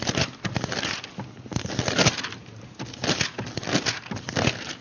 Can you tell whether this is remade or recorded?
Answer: recorded